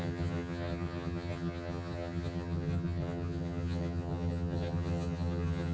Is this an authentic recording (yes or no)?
no